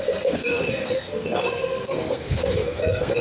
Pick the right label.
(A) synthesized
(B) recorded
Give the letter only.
A